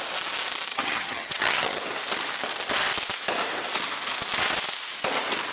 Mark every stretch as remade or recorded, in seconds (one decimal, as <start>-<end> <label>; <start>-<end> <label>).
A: 0.0-0.7 recorded; 0.7-1.8 remade; 1.8-5.5 recorded